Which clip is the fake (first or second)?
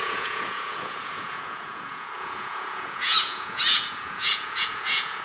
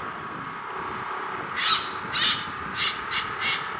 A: first